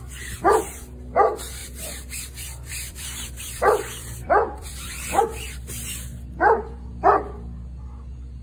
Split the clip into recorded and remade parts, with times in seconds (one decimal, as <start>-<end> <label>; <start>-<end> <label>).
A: 0.0-1.6 recorded; 1.6-5.2 remade; 5.2-8.4 recorded